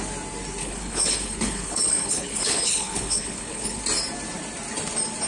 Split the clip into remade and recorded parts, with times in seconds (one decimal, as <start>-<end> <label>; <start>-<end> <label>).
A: 0.0-0.6 recorded; 0.6-3.8 remade; 3.8-5.3 recorded